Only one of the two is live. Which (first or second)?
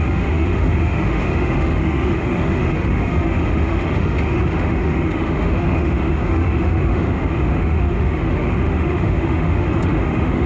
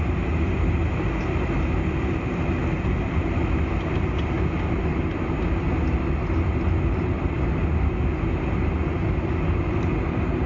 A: second